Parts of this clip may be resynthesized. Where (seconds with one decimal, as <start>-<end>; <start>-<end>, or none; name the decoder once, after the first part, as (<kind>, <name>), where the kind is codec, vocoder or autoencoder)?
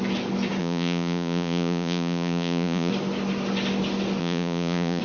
0.6-2.9 (vocoder, Vocos); 4.2-5.0